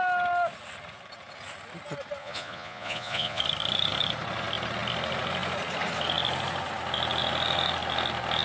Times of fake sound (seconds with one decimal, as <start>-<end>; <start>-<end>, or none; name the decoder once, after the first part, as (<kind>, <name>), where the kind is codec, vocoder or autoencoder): 2.2-3.4 (vocoder, Vocos)